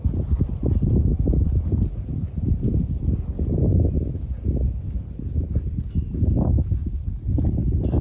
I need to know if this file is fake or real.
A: real